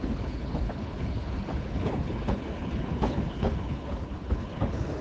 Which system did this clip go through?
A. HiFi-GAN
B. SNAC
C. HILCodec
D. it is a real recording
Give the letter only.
C